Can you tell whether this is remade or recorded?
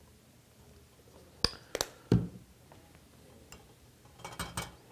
recorded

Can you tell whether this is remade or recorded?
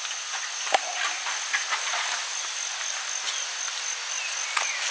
recorded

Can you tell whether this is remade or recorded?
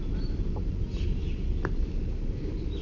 recorded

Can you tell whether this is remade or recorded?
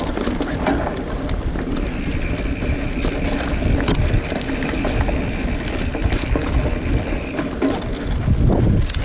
recorded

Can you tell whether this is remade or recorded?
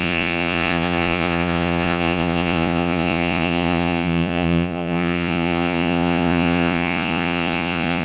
remade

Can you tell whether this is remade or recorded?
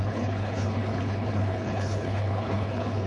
remade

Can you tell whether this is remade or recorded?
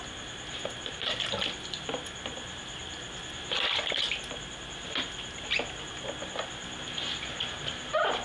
recorded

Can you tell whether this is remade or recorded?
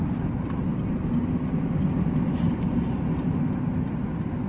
recorded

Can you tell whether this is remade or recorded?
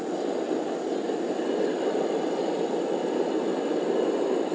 recorded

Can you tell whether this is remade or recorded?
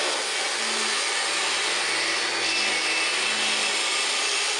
recorded